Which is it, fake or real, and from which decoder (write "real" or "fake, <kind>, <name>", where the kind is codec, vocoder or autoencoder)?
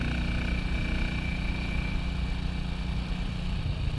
real